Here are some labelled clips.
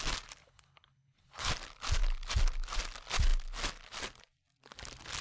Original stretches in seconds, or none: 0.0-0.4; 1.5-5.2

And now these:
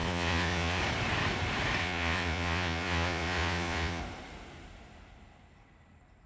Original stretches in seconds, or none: 0.8-1.8; 4.0-6.3